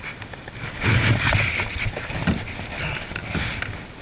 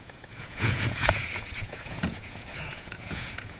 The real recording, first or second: first